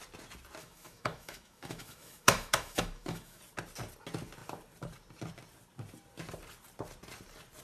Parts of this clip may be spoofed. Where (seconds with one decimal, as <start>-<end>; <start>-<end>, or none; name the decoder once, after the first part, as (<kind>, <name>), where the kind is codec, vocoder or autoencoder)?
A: 0.6-3.4 (autoencoder, DAC-VAE)